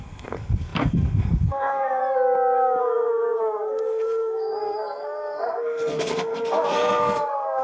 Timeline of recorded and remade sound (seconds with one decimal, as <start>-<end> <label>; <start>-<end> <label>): 0.0-2.0 remade; 2.0-2.8 recorded; 2.8-7.6 remade